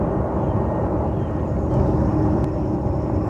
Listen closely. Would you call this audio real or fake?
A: real